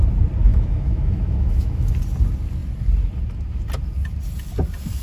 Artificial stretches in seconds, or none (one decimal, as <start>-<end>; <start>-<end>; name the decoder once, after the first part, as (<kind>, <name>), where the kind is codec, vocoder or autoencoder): 0.5-1.9 (autoencoder, DAC-VAE)